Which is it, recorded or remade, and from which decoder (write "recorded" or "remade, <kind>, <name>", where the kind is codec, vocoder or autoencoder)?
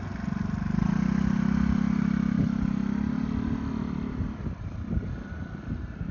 recorded